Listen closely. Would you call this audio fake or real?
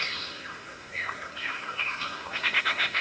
fake